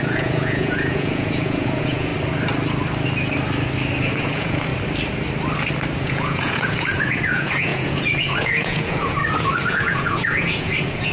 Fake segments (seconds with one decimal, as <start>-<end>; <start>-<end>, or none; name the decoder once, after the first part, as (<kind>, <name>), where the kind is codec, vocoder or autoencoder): 0.0-2.1 (vocoder, Vocos); 4.0-4.7; 6.0-9.2; 9.7-11.1